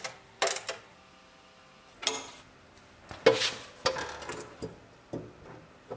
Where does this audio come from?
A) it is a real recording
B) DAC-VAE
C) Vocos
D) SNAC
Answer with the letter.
A